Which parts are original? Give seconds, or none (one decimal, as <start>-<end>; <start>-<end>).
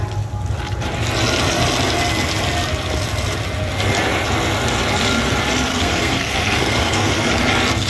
0.0-5.7; 7.1-7.9